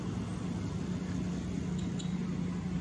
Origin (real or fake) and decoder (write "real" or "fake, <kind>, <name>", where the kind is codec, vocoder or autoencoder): real